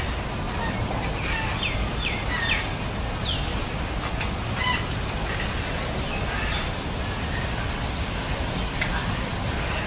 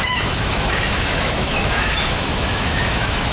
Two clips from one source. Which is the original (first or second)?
first